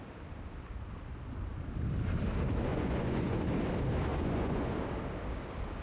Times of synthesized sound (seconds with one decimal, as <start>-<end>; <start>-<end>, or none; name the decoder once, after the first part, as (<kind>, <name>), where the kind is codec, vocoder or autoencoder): 2.7-3.4 (vocoder, Vocos); 4.1-4.7